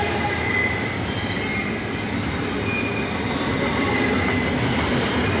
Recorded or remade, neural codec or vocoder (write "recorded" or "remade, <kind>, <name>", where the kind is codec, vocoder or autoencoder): recorded